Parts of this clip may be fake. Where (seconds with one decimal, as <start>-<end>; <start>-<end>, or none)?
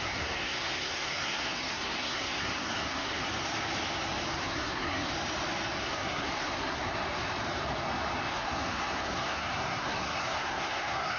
0.0-3.2; 4.4-5.1; 5.8-6.9; 8.3-11.2